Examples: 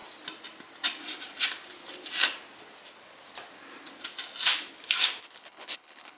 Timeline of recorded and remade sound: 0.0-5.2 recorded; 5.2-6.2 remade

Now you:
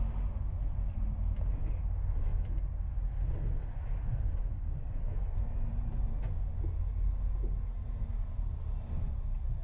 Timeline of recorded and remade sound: 0.0-9.6 recorded

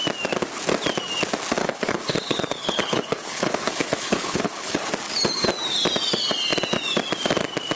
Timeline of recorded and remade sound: 0.0-1.6 recorded; 1.6-4.9 remade; 4.9-7.8 recorded

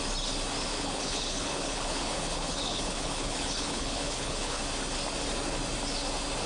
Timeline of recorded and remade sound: 0.0-0.7 recorded; 0.7-4.6 remade; 4.6-6.5 recorded

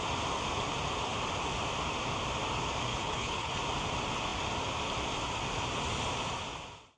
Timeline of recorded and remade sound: 0.0-2.9 recorded; 2.9-3.5 remade; 3.5-7.0 recorded

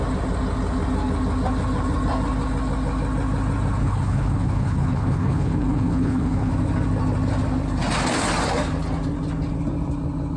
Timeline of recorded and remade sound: 0.0-3.8 recorded; 3.8-6.5 remade; 6.5-10.4 recorded

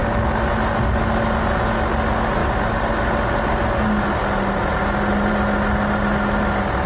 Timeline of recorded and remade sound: 0.0-6.9 recorded